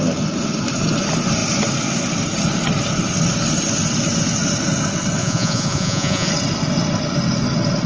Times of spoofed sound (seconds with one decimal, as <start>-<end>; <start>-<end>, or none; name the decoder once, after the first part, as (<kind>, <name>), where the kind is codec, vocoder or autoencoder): 5.2-6.3 (vocoder, Vocos)

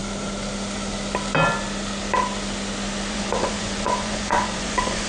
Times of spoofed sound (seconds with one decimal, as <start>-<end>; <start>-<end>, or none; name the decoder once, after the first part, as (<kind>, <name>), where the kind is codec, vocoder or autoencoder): 3.1-5.1 (vocoder, Vocos)